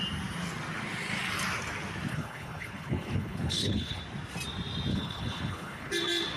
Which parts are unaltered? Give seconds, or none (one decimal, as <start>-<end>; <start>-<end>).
0.0-2.1; 4.0-4.9; 5.9-6.4